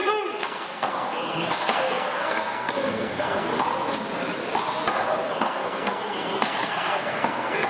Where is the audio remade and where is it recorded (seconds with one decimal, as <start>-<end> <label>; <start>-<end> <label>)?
0.0-3.5 remade; 3.5-5.0 recorded; 5.0-7.7 remade